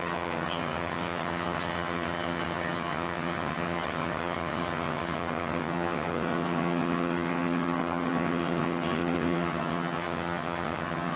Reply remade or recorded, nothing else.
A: remade